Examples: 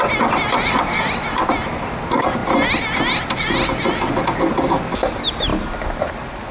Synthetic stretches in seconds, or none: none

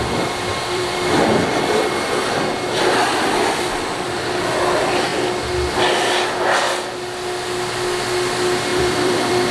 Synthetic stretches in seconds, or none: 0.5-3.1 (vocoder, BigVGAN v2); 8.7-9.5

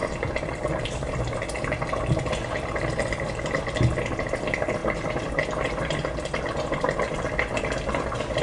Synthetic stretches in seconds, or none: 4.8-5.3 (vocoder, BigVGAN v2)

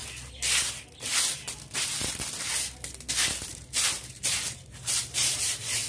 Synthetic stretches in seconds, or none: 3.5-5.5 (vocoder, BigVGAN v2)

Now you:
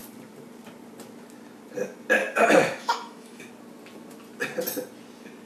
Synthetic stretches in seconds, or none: 2.2-3.5 (autoencoder, DAC-VAE)